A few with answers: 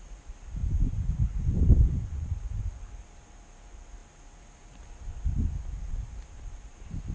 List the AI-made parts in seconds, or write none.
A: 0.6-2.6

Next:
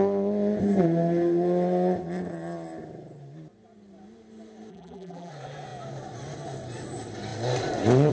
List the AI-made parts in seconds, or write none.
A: 4.7-5.3